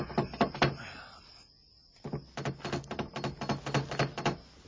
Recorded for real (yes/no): yes